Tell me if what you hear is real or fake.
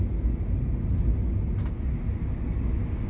real